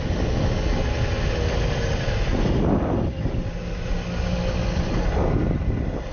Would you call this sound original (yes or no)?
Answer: yes